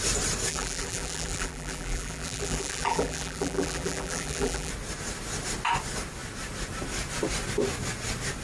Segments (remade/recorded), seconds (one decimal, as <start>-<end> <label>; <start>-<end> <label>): 0.0-0.5 recorded; 0.5-4.7 remade; 4.7-8.4 recorded